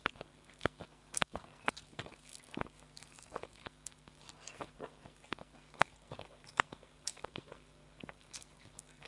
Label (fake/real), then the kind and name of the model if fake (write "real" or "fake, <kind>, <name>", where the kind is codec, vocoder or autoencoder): fake, codec, SNAC